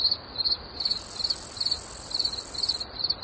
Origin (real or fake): real